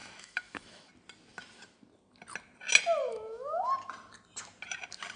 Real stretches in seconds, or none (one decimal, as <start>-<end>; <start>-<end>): 0.9-3.0; 3.7-5.2